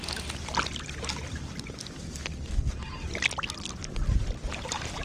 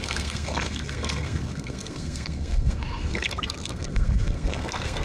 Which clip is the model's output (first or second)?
second